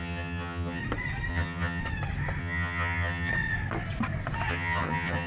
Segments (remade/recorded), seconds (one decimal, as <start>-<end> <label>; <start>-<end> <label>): 0.0-0.8 remade; 0.8-1.3 recorded; 1.3-1.8 remade; 1.8-2.4 recorded; 2.4-3.3 remade; 3.3-4.5 recorded; 4.5-5.3 remade